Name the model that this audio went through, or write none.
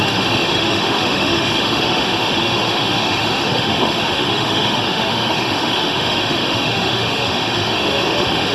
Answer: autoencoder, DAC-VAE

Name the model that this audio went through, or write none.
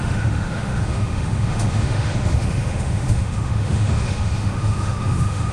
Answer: autoencoder, DAC-VAE